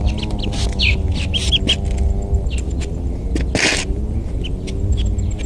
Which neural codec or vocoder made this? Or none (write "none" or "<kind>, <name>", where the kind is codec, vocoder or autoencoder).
none